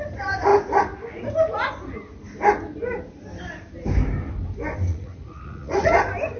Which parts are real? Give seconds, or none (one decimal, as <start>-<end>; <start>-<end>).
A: 0.0-4.9; 5.9-6.4